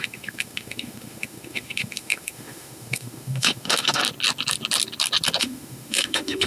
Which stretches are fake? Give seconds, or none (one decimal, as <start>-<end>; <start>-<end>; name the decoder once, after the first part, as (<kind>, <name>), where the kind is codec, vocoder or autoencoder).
0.0-4.0 (autoencoder, DAC-VAE); 5.4-6.5